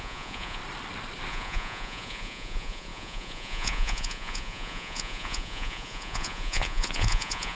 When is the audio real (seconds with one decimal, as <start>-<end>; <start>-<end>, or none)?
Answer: 0.6-1.3